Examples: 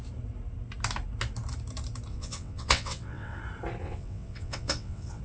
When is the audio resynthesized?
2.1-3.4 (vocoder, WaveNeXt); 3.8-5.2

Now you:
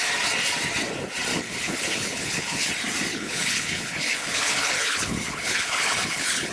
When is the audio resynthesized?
1.3-2.7 (codec, HILCodec); 3.1-6.5

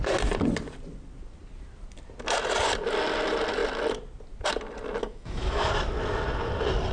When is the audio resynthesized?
5.0-5.7 (autoencoder, DAC-VAE)

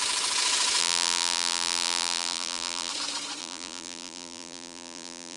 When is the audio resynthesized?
0.8-2.9 (vocoder, BigVGAN v2); 3.4-5.4

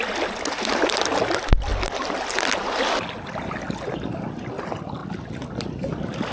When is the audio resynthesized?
none

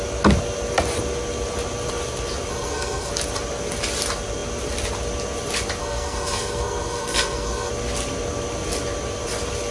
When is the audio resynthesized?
2.5-3.1 (codec, SNAC); 5.8-7.7

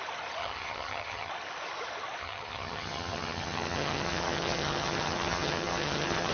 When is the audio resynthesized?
0.4-1.3 (vocoder, HiFi-GAN); 2.2-6.3

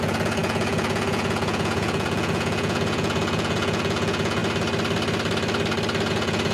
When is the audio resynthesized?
0.0-4.4 (vocoder, Vocos); 6.1-6.5